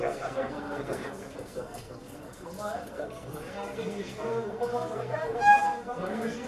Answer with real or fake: fake